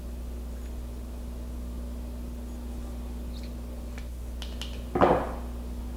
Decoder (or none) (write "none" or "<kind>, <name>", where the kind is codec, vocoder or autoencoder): none